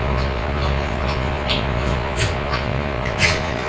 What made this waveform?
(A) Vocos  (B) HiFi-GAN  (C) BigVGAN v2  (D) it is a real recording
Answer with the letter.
A